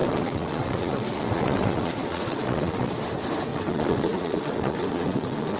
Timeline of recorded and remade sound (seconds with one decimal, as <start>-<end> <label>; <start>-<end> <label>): 0.0-2.9 remade; 2.9-3.5 recorded; 3.5-5.6 remade